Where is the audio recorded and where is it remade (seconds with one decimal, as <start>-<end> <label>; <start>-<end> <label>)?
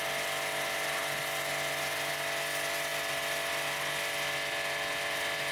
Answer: 0.0-5.5 recorded